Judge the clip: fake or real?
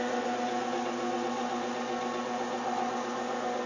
real